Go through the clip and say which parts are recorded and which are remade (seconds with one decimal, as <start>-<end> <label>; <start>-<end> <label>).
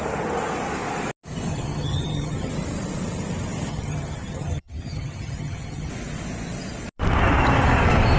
0.0-1.5 recorded; 1.5-2.5 remade; 2.5-3.7 recorded; 3.7-5.9 remade; 5.9-8.2 recorded